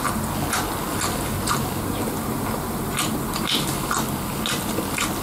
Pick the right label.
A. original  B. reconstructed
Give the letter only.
A